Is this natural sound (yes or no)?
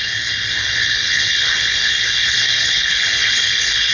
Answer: no